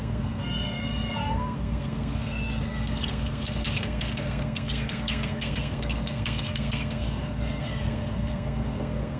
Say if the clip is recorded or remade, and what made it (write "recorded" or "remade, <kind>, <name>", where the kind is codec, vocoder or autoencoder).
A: remade, codec, SNAC